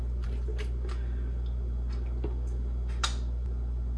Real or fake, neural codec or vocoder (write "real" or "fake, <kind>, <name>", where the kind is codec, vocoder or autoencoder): real